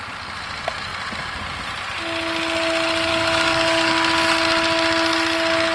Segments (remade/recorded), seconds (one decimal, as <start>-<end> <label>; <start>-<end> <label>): 0.0-3.1 recorded; 3.1-3.9 remade; 3.9-5.7 recorded